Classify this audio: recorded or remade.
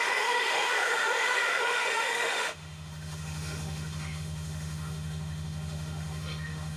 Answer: remade